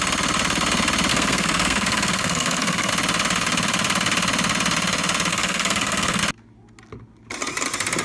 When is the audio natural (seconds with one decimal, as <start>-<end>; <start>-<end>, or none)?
0.0-1.1; 2.9-5.3; 6.2-8.0